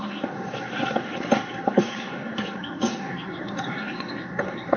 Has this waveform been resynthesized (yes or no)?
yes